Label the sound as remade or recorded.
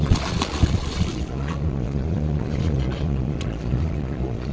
remade